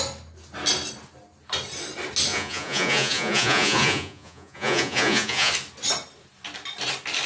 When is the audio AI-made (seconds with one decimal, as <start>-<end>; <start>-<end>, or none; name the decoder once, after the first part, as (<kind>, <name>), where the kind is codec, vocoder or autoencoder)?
2.3-5.5 (vocoder, Vocos)